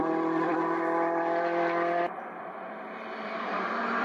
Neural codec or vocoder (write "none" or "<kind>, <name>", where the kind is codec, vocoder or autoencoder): vocoder, BigVGAN v2